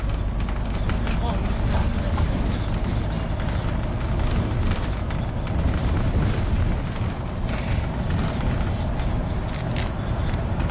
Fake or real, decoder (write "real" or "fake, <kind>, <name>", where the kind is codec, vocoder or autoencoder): real